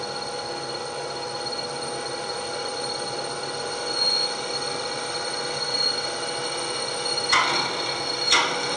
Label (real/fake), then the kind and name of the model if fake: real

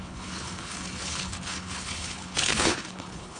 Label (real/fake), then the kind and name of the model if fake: fake, codec, HILCodec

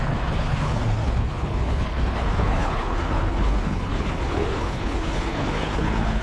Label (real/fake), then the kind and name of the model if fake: fake, codec, HILCodec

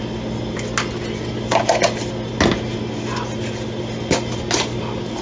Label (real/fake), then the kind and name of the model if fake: real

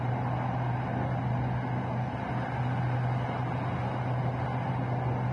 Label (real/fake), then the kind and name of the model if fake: real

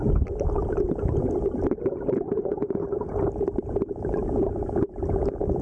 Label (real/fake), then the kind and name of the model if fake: real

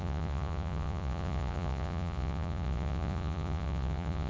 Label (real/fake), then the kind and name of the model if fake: fake, vocoder, Vocos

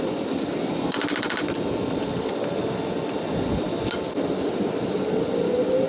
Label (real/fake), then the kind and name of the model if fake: real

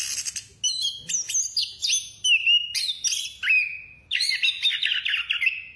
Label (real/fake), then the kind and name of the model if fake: real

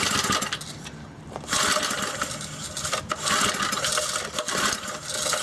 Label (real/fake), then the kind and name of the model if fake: real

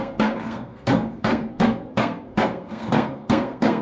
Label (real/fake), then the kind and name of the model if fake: fake, codec, SNAC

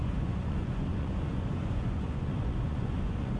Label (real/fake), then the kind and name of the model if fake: fake, vocoder, Vocos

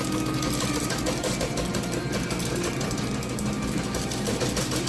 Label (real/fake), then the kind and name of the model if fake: real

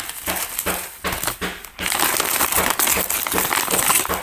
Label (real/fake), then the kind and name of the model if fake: real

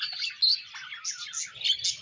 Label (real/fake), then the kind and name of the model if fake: real